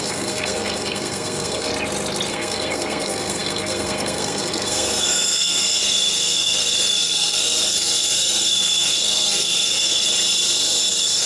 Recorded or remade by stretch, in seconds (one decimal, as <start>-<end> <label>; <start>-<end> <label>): 0.0-1.7 remade; 1.7-2.3 recorded; 2.3-10.1 remade; 10.1-10.9 recorded; 10.9-11.3 remade